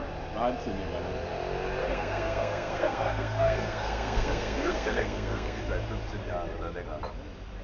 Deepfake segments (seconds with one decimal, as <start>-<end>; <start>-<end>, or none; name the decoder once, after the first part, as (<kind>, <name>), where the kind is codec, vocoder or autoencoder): 1.8-5.6 (codec, SNAC)